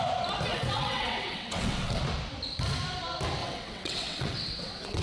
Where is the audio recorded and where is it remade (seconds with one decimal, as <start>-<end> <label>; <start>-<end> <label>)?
0.0-0.5 recorded; 0.5-2.0 remade; 2.0-3.4 recorded; 3.4-5.0 remade